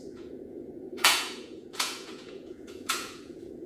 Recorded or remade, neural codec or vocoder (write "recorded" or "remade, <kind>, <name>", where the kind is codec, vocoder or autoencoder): remade, vocoder, Vocos